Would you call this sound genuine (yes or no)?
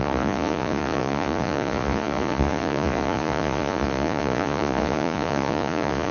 no